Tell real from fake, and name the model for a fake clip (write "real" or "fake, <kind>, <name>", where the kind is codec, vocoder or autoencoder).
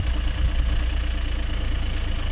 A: real